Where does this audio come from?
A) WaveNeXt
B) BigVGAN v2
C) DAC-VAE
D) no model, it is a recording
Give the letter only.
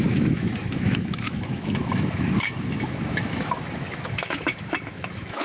C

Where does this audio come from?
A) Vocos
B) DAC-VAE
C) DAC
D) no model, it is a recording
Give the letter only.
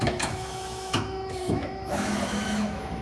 B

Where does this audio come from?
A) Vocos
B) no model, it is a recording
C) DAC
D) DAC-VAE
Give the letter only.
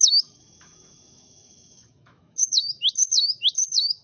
D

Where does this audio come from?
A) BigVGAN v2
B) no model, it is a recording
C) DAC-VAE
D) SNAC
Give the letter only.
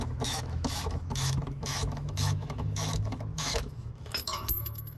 C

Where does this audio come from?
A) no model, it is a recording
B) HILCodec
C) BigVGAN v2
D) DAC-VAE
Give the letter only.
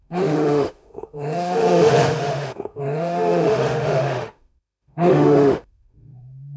D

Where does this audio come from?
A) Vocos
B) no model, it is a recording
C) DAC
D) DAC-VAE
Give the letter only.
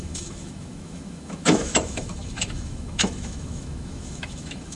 D